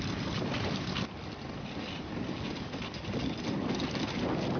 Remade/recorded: recorded